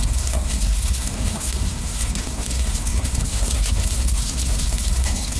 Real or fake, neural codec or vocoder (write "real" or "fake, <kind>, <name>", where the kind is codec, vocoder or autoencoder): fake, codec, SNAC